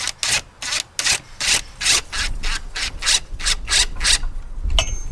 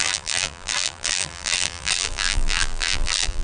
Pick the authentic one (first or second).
first